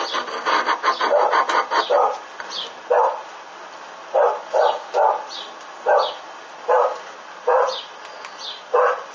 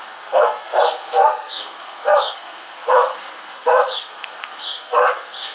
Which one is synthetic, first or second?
second